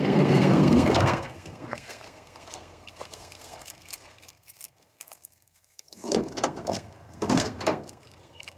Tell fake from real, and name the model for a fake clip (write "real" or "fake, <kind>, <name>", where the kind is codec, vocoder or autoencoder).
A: fake, codec, SNAC